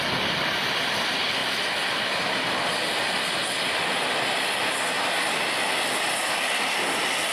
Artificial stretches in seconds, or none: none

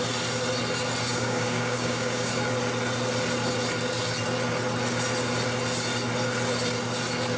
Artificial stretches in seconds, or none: 1.1-2.3 (codec, DAC)

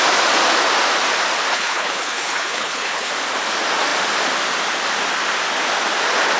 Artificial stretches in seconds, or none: 1.5-3.1 (codec, HILCodec)

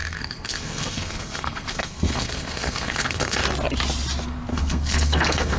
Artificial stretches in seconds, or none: 0.0-3.4 (codec, SNAC); 4.5-5.6

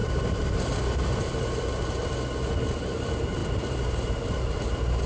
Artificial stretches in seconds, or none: 0.0-2.0 (vocoder, BigVGAN v2); 2.6-5.1